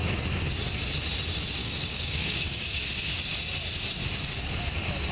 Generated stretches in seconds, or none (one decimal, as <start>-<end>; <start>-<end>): 1.6-2.8